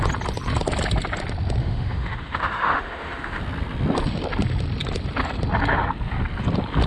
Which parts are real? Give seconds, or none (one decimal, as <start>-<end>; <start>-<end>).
0.0-1.6; 3.4-6.9